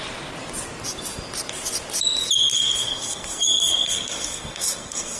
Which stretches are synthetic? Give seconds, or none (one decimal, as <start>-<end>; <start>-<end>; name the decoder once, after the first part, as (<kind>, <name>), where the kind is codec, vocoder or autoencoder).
2.5-5.2 (codec, SNAC)